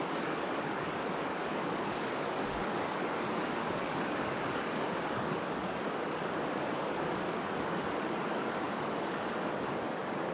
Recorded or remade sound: remade